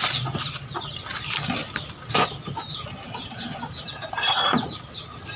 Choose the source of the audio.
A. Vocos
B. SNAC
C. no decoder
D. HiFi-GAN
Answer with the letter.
C